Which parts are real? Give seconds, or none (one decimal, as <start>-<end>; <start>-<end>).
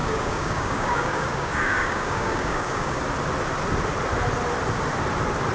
3.0-5.5